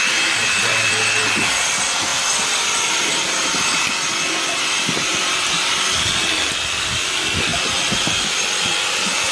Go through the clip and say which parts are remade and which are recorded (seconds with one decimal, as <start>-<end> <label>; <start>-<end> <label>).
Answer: 0.0-7.5 remade; 7.5-9.3 recorded